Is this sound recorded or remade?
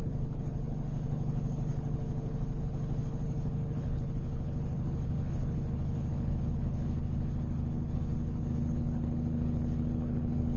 remade